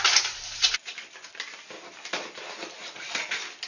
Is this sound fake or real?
real